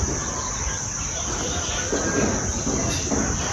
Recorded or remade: recorded